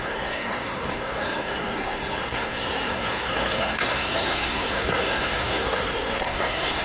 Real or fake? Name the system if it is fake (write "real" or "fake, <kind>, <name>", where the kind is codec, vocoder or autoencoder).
fake, codec, SNAC